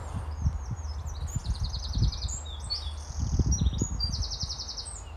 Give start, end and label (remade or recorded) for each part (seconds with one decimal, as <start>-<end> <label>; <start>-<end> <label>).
0.0-5.2 recorded